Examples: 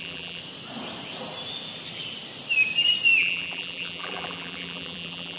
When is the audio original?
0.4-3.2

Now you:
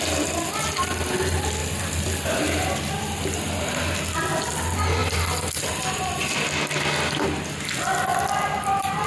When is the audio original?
0.0-1.6; 3.3-5.0; 5.6-8.1

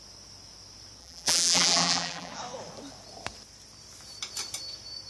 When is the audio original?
0.0-1.0; 2.3-5.1

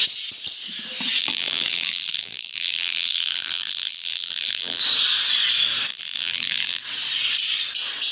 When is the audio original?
0.0-1.2; 4.8-5.9; 6.8-8.1

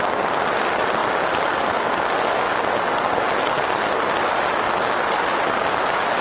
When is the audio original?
0.0-6.2

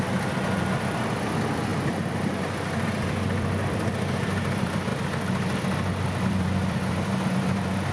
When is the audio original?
1.7-2.4; 4.9-6.2

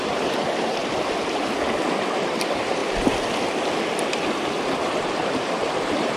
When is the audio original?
0.8-2.1; 2.8-4.2

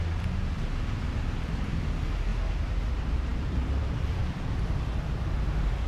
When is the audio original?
0.0-1.5; 2.3-2.9; 4.2-5.0